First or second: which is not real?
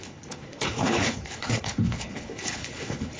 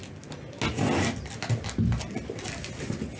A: first